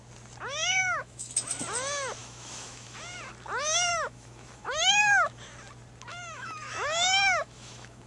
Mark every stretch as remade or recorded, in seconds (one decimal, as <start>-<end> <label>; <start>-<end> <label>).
0.0-0.8 recorded; 0.8-1.6 remade; 1.6-2.2 recorded; 2.2-3.0 remade; 3.0-3.9 recorded; 3.9-5.4 remade; 5.4-6.1 recorded; 6.1-8.1 remade